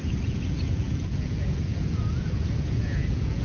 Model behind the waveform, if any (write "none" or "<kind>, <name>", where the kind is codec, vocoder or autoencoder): vocoder, Vocos